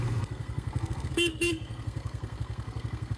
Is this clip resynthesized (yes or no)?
yes